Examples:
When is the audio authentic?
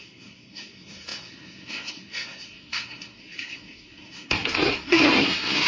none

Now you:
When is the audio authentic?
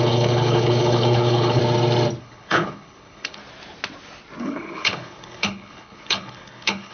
1.6-2.2; 3.4-4.4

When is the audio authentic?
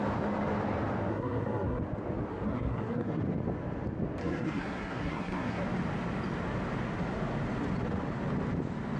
0.0-1.1; 1.8-2.3; 3.2-4.2; 5.6-9.0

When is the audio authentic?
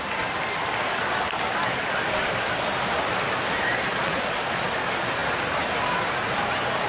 0.0-3.9; 4.7-6.9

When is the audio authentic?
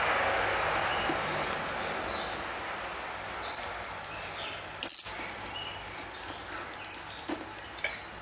0.0-8.2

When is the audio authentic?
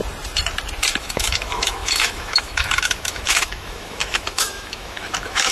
0.0-1.0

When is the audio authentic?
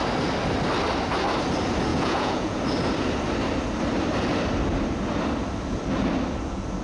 0.0-1.9; 2.6-6.8